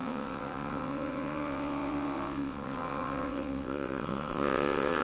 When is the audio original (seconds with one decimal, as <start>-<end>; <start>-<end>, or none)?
none